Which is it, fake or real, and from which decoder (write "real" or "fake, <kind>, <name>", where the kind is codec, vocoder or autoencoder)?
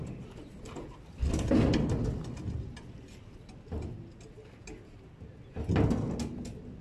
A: real